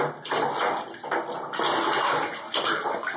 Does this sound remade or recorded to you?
recorded